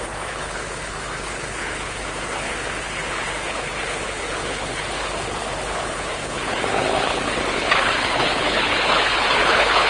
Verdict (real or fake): fake